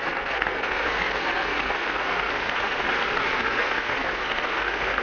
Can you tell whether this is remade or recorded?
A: remade